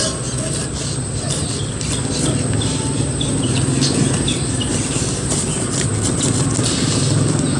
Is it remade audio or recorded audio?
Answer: recorded